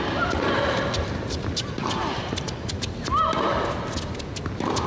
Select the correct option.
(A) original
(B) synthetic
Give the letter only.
A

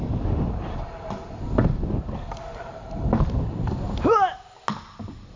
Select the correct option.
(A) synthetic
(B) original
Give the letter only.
B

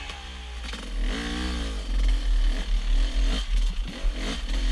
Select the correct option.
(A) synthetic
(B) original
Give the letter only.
B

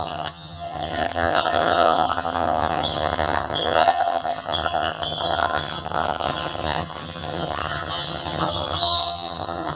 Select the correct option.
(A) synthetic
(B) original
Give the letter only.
A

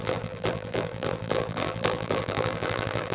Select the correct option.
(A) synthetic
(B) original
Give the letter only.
A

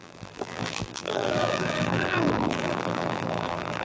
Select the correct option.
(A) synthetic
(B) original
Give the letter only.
A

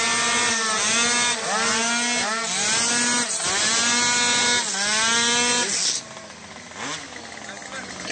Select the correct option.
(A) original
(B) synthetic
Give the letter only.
A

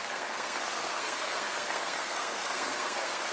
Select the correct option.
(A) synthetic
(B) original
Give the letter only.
A